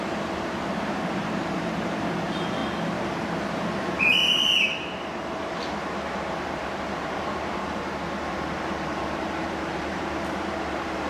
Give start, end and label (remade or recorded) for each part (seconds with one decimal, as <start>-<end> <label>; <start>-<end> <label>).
0.0-2.6 remade; 2.6-3.5 recorded; 3.5-4.2 remade; 4.2-6.3 recorded; 6.3-7.8 remade; 7.8-8.3 recorded; 8.3-11.1 remade